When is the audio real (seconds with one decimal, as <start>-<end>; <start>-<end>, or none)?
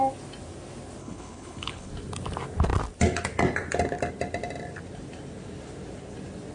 0.0-1.0; 1.9-6.5